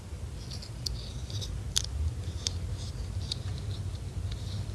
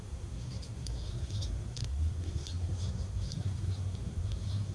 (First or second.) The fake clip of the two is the second